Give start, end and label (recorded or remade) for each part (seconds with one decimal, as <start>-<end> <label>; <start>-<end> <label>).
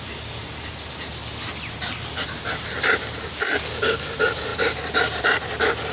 0.0-5.9 recorded